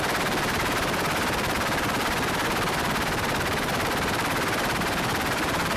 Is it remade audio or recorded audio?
remade